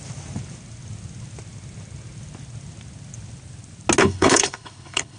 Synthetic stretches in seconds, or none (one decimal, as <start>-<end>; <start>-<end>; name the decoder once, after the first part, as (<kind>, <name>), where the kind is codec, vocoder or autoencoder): 4.0-5.2 (codec, HILCodec)